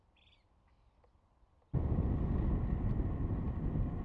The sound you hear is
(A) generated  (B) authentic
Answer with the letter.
B